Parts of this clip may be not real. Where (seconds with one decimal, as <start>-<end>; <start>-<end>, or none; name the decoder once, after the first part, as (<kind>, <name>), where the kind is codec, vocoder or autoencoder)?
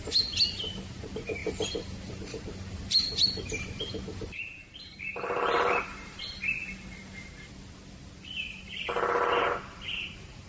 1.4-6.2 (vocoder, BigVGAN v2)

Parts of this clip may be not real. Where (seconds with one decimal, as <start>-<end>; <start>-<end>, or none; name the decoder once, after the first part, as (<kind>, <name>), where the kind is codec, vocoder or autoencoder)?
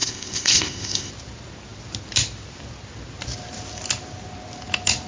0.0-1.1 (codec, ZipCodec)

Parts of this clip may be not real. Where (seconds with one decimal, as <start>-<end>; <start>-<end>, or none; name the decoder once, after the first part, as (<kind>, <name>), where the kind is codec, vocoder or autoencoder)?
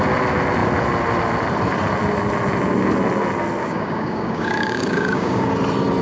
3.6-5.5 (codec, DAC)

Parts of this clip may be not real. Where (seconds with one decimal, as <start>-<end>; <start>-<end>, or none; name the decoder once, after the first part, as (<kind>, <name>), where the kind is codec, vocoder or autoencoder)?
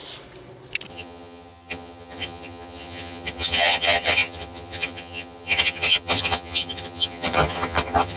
0.9-8.2 (vocoder, HiFi-GAN)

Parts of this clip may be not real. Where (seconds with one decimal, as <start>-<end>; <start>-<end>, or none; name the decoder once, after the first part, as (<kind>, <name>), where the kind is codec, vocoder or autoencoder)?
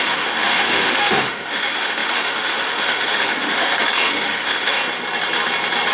0.0-4.8 (autoencoder, DAC-VAE)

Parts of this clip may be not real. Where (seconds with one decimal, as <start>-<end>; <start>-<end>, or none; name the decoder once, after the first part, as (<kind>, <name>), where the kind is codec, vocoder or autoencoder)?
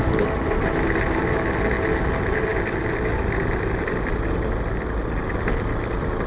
none